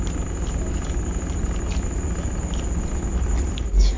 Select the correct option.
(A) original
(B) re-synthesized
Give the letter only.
A